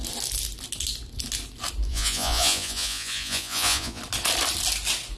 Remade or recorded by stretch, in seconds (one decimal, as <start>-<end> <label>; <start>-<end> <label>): 0.0-1.9 recorded; 1.9-4.0 remade; 4.0-5.2 recorded